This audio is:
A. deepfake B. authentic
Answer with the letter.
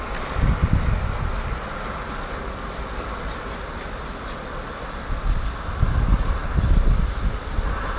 B